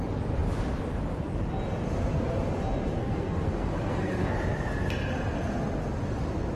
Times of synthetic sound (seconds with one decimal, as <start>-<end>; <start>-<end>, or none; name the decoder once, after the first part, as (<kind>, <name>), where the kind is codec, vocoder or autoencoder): 3.0-4.3 (codec, SNAC)